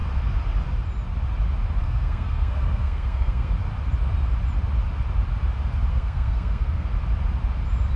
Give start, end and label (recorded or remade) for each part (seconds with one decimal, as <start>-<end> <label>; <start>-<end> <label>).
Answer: 0.0-1.8 recorded; 1.8-3.5 remade; 3.5-5.9 recorded; 5.9-6.9 remade; 6.9-8.0 recorded